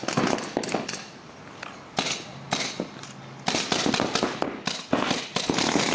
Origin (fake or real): real